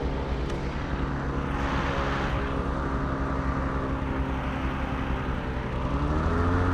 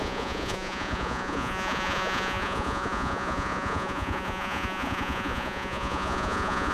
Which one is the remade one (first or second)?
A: second